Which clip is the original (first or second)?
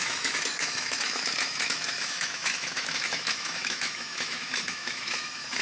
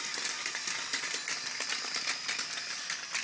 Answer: second